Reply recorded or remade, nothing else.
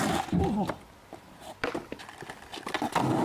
recorded